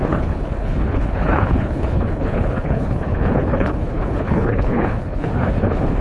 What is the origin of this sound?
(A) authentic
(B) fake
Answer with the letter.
B